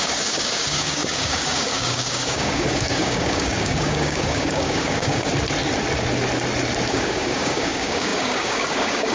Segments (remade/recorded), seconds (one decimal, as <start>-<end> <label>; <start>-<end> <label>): 0.0-5.3 remade; 5.3-6.9 recorded; 6.9-9.1 remade

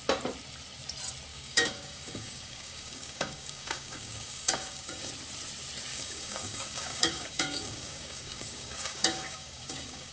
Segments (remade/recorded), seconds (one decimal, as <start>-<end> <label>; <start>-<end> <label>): 0.0-1.3 recorded; 1.3-5.1 remade; 5.1-5.9 recorded; 5.9-10.1 remade

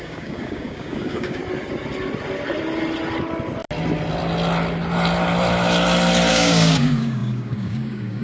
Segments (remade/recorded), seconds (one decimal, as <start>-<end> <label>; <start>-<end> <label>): 0.0-1.4 remade; 1.4-6.3 recorded; 6.3-8.2 remade

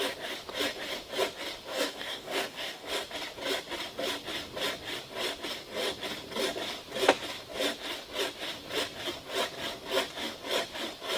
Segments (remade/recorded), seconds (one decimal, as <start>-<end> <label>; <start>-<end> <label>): 0.0-1.7 recorded; 1.7-2.9 remade; 2.9-11.2 recorded

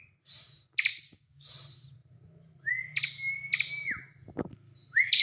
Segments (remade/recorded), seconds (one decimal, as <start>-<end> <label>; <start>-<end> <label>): 0.0-0.9 recorded; 0.9-1.5 remade; 1.5-5.2 recorded

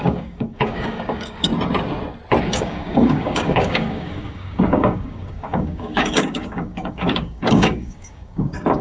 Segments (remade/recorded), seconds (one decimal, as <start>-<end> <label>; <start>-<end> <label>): 0.0-1.5 remade; 1.5-2.4 recorded; 2.4-8.8 remade